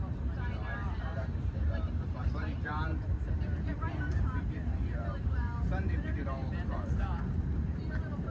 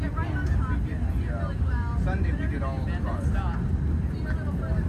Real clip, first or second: second